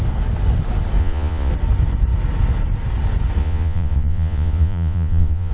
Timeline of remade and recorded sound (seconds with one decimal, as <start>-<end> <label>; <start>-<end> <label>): 0.0-1.0 recorded; 1.0-1.5 remade; 1.5-3.4 recorded; 3.4-5.5 remade